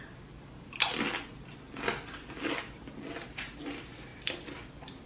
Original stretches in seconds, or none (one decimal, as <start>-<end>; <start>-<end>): 0.0-5.1